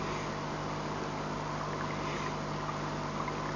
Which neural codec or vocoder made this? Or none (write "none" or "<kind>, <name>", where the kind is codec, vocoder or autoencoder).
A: none